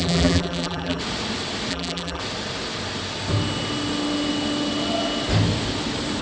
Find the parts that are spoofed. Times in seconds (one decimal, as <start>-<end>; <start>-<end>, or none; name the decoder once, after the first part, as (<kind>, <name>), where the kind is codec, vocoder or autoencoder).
0.0-1.0 (vocoder, BigVGAN v2); 1.7-2.2